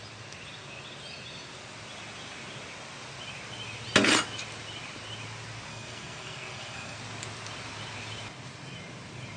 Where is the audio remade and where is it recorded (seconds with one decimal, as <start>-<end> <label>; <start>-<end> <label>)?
0.0-5.7 recorded; 5.7-7.0 remade; 7.0-9.4 recorded